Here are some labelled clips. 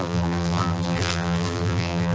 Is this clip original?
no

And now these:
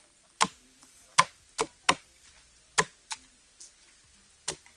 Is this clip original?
yes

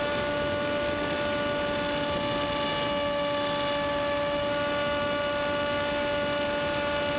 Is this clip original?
yes